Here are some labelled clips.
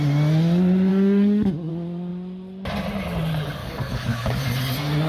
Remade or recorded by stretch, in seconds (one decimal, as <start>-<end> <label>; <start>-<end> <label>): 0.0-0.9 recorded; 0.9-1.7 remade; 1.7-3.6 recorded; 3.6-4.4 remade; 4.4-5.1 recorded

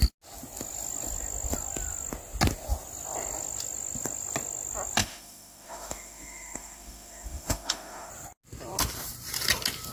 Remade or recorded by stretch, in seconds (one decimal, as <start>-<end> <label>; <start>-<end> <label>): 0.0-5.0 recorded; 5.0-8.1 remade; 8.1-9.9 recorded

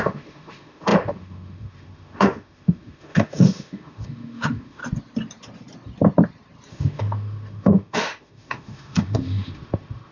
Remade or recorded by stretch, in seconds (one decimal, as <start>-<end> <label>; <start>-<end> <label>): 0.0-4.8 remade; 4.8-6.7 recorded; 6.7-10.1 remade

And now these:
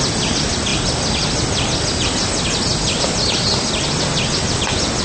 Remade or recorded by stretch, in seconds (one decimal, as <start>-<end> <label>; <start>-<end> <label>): 0.0-5.0 recorded

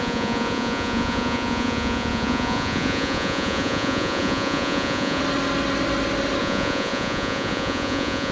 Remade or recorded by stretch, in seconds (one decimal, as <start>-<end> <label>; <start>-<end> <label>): 0.0-5.2 remade; 5.2-6.4 recorded; 6.4-8.3 remade

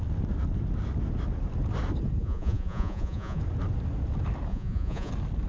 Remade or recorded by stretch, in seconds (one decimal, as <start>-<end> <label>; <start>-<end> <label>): 0.0-2.2 recorded; 2.2-3.4 remade; 3.4-4.5 recorded; 4.5-5.1 remade; 5.1-5.5 recorded